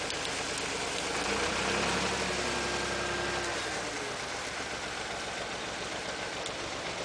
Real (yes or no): yes